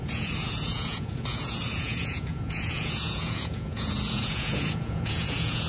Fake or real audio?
fake